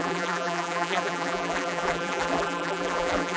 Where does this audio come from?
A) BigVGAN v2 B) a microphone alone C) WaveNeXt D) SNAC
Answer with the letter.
A